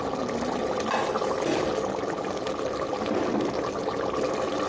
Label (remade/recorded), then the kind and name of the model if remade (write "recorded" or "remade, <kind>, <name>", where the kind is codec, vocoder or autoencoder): recorded